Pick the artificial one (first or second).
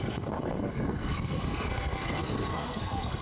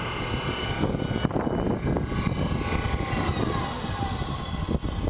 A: first